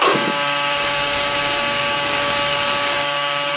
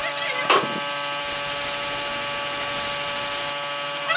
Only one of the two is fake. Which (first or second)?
first